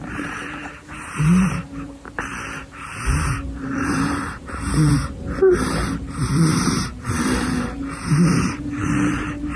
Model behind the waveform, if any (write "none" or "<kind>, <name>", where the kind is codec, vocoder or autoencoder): vocoder, BigVGAN v2